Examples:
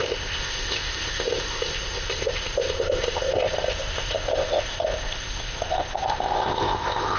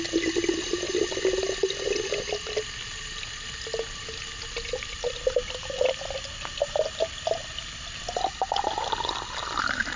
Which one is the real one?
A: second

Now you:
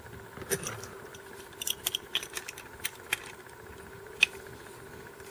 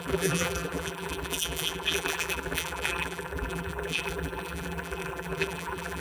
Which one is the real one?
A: first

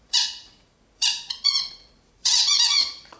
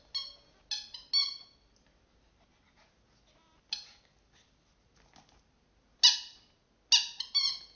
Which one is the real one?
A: second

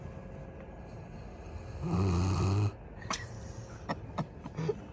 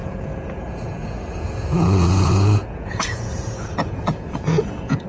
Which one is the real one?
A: first